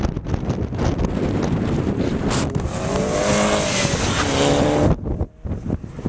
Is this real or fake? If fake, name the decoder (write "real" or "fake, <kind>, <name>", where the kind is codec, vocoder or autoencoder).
real